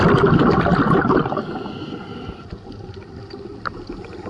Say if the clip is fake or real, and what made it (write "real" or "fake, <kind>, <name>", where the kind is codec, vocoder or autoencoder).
real